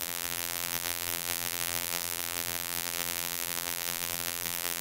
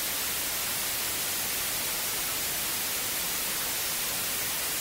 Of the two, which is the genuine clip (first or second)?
second